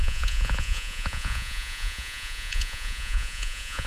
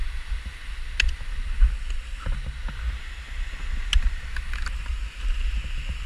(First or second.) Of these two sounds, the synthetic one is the first